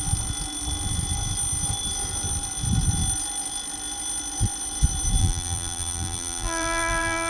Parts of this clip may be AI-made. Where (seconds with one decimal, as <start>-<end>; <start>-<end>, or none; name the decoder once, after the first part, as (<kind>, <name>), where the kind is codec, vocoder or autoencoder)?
5.2-7.3 (vocoder, BigVGAN v2)